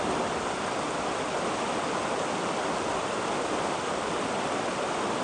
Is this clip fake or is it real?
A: real